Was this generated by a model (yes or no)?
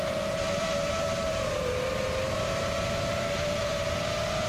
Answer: yes